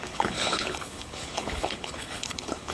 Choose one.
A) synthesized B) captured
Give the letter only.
A